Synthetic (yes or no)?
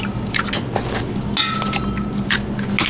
no